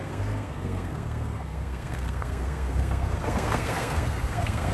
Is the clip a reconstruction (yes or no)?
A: yes